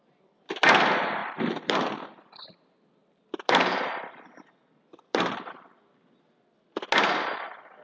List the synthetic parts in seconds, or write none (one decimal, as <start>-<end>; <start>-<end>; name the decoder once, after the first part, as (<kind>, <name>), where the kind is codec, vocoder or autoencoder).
1.2-2.5 (vocoder, BigVGAN v2); 3.0-6.1